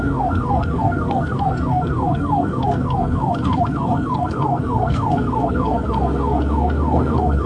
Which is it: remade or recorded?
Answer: remade